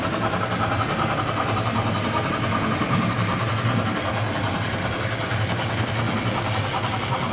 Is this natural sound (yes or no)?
yes